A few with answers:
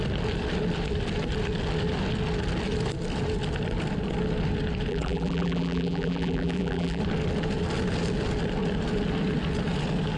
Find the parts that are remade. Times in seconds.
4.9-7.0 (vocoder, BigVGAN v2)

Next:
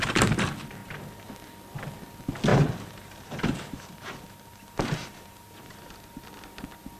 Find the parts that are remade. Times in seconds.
0.8-1.3 (vocoder, BigVGAN v2); 2.5-6.0